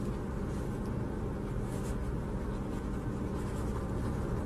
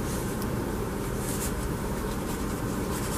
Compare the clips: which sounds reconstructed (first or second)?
second